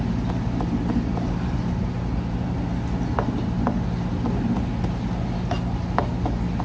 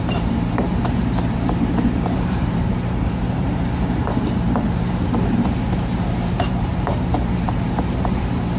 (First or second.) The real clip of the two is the first